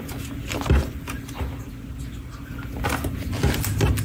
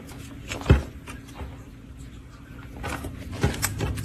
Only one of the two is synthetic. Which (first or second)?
second